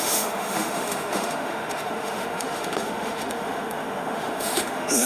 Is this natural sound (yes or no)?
no